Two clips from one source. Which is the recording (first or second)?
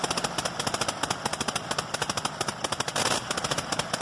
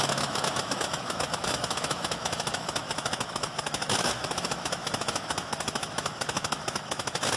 first